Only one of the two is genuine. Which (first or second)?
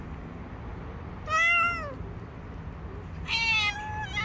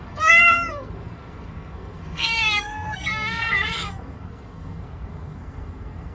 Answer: first